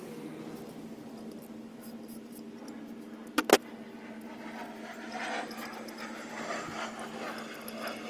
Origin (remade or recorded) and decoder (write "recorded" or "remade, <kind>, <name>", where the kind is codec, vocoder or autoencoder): recorded